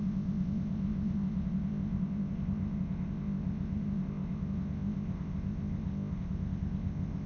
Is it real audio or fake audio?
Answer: fake